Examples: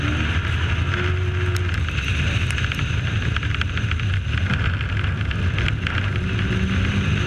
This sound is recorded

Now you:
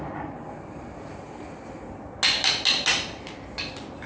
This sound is recorded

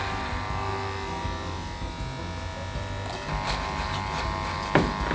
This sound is recorded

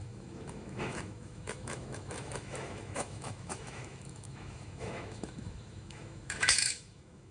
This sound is remade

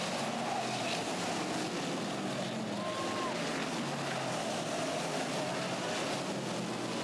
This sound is recorded